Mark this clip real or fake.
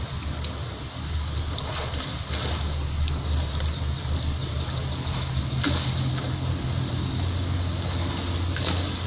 real